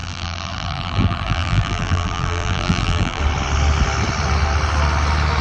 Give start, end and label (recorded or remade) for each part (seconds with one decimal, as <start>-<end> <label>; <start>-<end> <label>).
0.0-3.2 remade; 3.2-5.4 recorded